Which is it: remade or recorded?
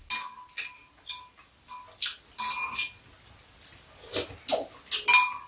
recorded